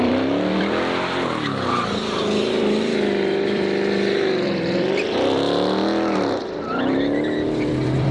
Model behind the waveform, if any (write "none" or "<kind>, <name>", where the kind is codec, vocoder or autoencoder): vocoder, BigVGAN v2